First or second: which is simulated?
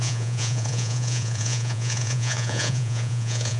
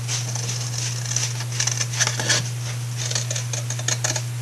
first